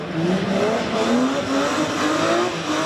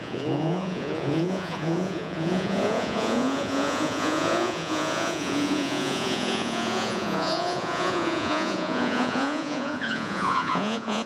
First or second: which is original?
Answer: first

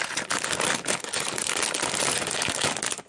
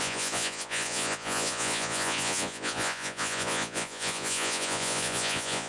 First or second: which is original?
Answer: first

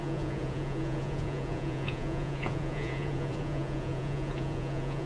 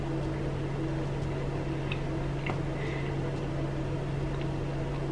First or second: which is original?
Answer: second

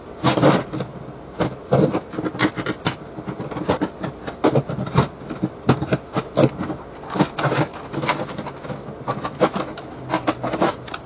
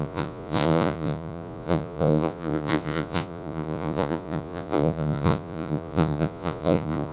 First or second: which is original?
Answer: first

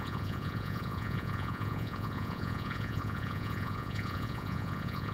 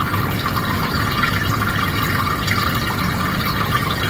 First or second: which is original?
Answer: second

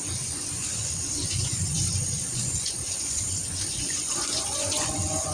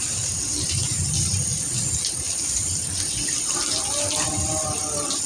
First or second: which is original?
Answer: second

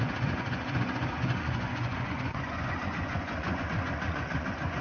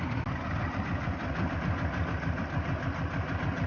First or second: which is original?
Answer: second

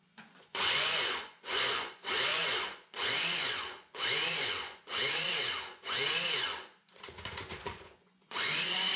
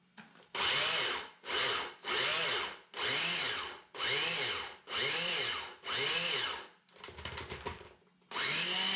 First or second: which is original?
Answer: second